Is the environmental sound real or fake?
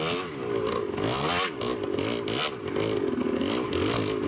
real